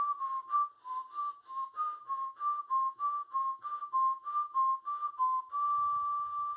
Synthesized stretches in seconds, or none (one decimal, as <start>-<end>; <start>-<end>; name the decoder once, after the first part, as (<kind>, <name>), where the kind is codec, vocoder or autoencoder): 1.4-5.4 (autoencoder, DAC-VAE)